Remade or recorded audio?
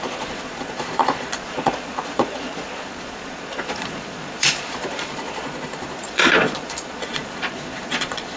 remade